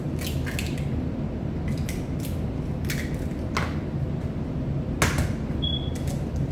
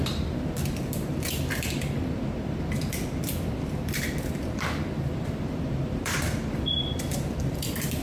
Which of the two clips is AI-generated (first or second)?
second